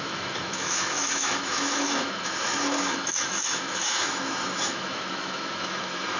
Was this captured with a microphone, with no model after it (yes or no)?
no